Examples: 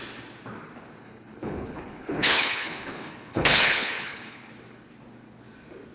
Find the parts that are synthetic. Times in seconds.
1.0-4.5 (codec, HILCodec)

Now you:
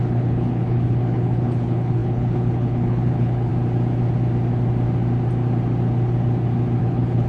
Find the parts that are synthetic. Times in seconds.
0.0-3.5 (codec, HILCodec); 6.8-7.3

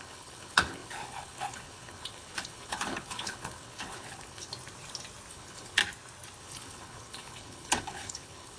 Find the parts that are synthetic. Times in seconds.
0.0-4.5 (codec, HILCodec); 5.3-5.8; 6.4-8.6

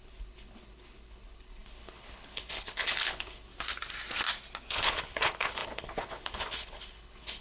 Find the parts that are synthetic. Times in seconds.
0.0-3.5 (codec, HILCodec); 4.7-7.4

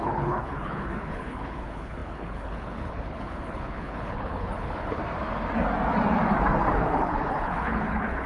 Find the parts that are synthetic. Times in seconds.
0.0-5.0 (codec, HILCodec); 6.7-8.3

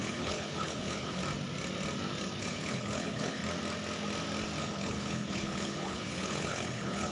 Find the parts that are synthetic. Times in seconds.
0.0-1.2 (codec, HILCodec); 2.4-3.4; 4.6-7.1

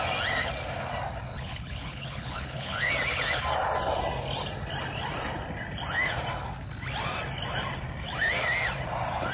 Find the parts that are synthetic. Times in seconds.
1.3-2.9 (codec, HILCodec)